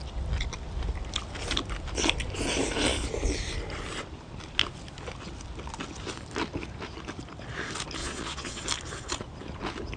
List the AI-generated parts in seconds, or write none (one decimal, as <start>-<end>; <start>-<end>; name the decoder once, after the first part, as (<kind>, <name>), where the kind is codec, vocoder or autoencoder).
8.0-8.6 (vocoder, Vocos)